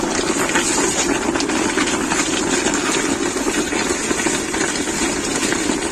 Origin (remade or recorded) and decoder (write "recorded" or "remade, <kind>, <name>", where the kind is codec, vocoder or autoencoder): recorded